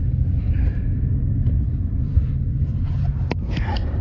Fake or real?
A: fake